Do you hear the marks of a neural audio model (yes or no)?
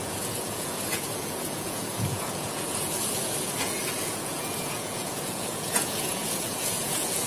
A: yes